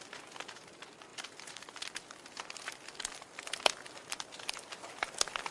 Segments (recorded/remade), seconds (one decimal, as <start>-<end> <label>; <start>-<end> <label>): 0.0-5.5 recorded